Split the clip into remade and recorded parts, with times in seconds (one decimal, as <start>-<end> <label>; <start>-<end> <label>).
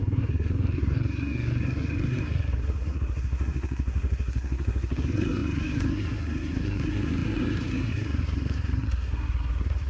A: 0.0-9.9 remade